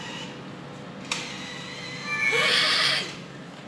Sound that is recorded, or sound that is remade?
recorded